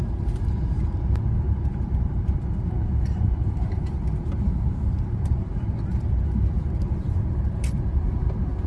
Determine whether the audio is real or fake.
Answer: fake